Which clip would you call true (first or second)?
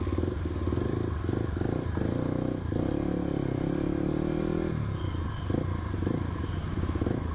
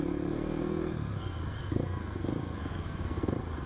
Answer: first